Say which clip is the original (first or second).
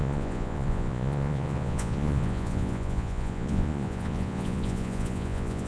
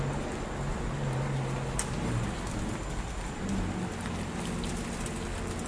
second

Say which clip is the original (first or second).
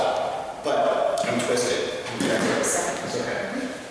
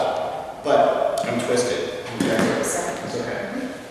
second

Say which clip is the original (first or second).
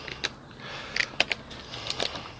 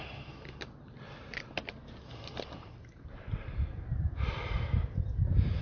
first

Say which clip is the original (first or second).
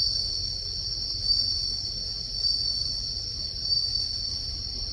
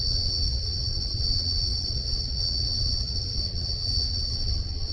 first